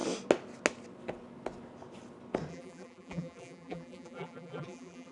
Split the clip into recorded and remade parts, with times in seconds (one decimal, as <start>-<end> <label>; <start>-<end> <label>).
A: 0.0-2.5 recorded; 2.5-5.1 remade